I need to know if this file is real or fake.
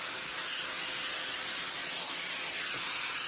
real